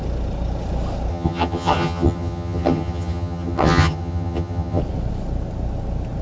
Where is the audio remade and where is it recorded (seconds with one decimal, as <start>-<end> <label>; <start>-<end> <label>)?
0.0-1.1 recorded; 1.1-4.8 remade; 4.8-6.2 recorded